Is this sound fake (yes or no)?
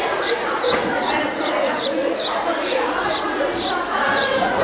yes